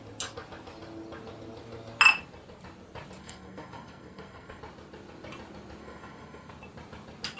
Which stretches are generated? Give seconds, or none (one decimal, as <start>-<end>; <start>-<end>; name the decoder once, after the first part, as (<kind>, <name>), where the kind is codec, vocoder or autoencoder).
3.2-4.6 (codec, SNAC); 5.8-6.5